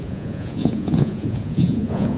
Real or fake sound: fake